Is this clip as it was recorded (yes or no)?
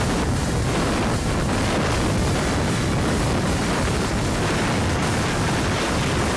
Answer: yes